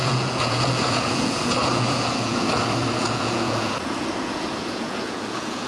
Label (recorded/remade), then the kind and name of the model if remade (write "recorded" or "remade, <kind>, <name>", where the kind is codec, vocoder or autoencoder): remade, vocoder, Vocos